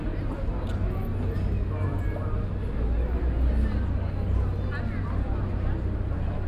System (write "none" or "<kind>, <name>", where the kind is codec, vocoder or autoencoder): none